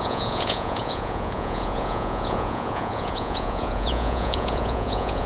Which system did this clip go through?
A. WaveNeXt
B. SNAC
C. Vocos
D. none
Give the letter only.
C